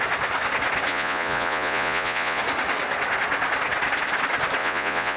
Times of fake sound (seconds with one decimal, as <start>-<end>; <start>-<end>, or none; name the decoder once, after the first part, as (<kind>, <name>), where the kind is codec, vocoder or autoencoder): 0.9-2.4 (vocoder, Vocos); 4.6-5.2